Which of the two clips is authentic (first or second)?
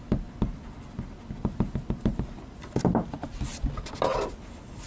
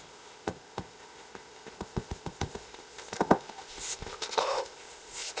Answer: first